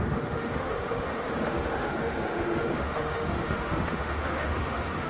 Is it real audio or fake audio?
fake